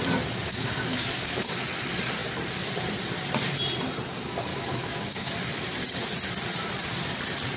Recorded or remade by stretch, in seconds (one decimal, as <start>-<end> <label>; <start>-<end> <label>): 0.0-0.5 recorded; 0.5-1.6 remade; 1.6-4.5 recorded; 4.5-5.3 remade; 5.3-7.6 recorded